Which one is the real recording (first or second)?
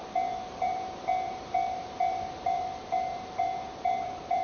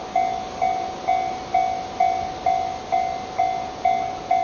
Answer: second